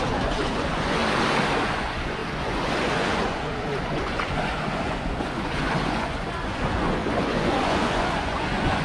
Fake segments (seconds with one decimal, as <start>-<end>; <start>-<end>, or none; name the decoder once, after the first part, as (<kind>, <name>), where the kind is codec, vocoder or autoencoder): 0.0-1.0 (vocoder, Vocos); 1.6-8.8